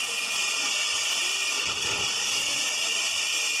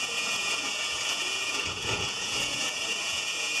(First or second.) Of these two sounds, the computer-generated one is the second